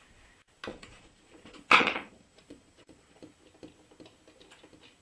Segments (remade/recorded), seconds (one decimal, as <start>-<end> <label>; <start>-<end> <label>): 0.0-0.7 recorded; 0.7-3.2 remade; 3.2-5.0 recorded